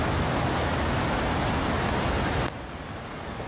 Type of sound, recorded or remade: recorded